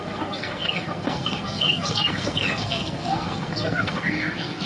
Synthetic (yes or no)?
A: yes